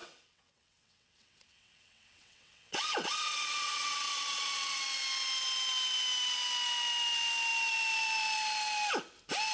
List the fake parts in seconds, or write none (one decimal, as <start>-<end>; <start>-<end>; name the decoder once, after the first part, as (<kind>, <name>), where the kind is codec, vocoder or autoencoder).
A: 0.0-4.8 (vocoder, WaveNeXt)